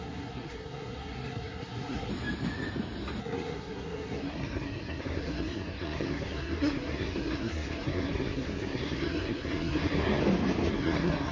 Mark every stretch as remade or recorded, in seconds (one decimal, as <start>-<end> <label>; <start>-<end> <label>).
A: 0.0-2.1 remade; 2.1-3.2 recorded; 3.2-10.2 remade; 10.2-10.7 recorded; 10.7-11.3 remade